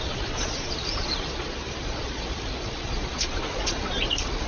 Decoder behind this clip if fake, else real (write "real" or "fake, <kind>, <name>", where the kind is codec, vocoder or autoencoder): fake, vocoder, Vocos